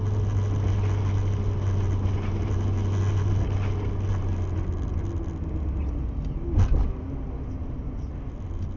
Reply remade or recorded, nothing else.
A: recorded